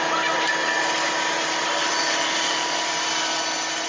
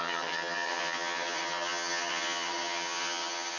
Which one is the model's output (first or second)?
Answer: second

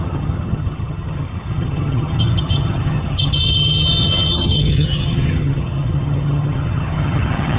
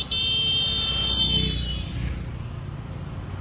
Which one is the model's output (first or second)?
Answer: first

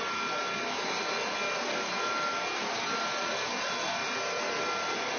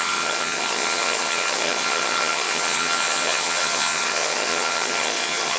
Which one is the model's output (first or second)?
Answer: second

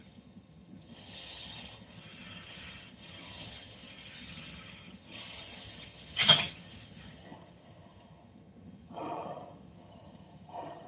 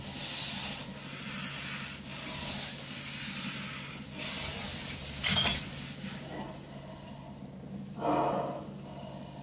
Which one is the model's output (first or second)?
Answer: first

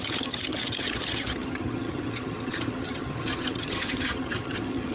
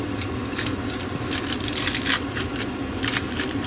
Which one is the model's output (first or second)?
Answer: first